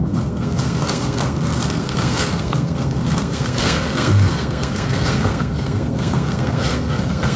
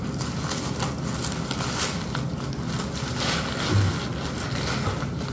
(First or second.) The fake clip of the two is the first